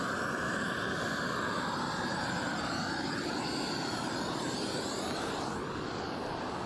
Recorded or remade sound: recorded